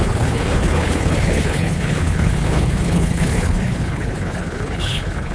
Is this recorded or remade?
remade